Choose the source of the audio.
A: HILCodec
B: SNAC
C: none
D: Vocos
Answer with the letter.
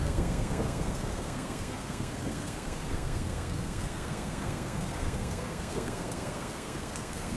B